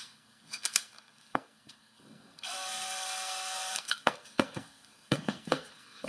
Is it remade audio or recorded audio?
remade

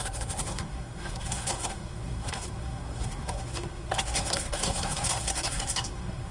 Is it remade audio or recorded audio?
remade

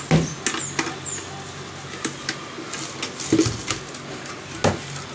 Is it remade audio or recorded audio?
recorded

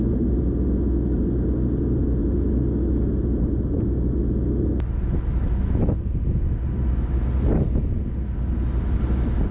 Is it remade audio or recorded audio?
recorded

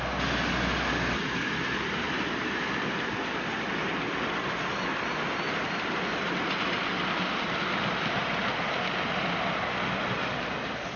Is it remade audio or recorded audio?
recorded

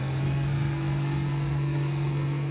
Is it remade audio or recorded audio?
remade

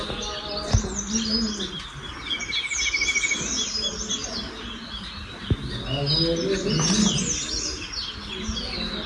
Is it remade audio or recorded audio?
recorded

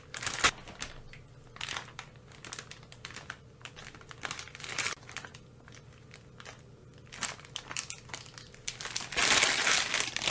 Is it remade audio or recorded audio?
recorded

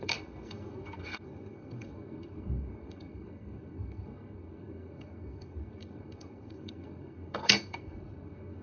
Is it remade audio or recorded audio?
remade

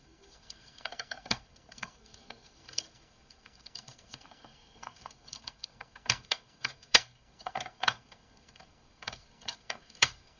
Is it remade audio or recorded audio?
remade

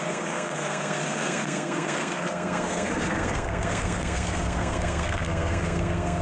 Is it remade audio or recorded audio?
remade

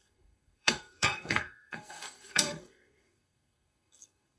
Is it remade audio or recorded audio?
remade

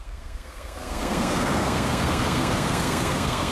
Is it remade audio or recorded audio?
remade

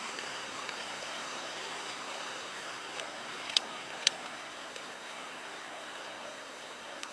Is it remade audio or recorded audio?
remade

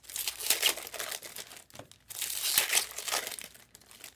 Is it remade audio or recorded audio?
recorded